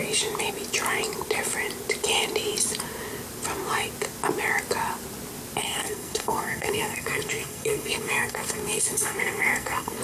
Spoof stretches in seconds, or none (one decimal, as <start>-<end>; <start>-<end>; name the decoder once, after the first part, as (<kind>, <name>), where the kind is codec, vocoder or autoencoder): 5.6-10.0 (codec, SNAC)